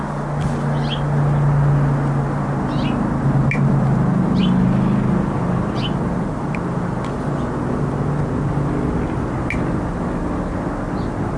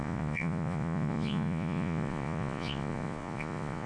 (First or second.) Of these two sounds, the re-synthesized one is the second